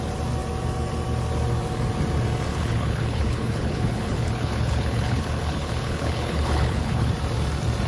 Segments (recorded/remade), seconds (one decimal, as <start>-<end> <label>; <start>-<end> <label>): 0.0-2.5 recorded; 2.5-7.1 remade; 7.1-7.9 recorded